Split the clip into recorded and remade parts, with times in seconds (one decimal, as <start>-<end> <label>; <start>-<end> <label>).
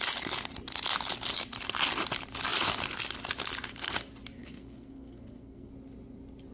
0.0-4.4 recorded; 4.4-5.7 remade; 5.7-6.5 recorded